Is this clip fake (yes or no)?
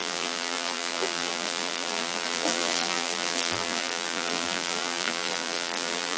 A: yes